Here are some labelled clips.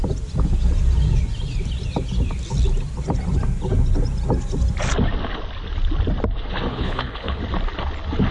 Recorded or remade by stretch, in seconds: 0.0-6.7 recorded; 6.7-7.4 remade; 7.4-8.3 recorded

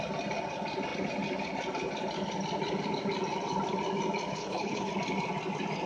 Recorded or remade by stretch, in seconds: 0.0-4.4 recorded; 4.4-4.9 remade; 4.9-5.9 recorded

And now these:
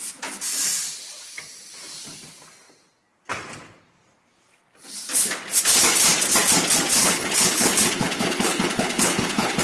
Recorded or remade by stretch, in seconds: 0.0-7.0 recorded; 7.0-9.6 remade

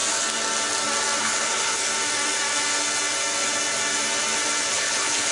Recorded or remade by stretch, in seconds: 0.0-1.2 recorded; 1.2-1.9 remade; 1.9-4.7 recorded; 4.7-5.3 remade

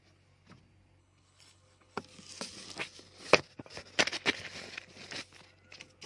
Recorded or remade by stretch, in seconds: 0.0-1.0 recorded; 1.0-2.0 remade; 2.0-6.1 recorded

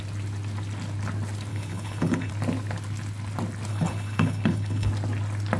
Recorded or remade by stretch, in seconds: 0.0-1.5 recorded; 1.5-2.3 remade; 2.3-3.7 recorded; 3.7-4.9 remade; 4.9-5.6 recorded